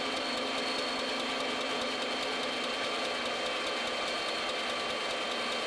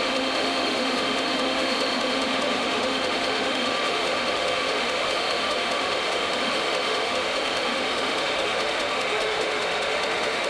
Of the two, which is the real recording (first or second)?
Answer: first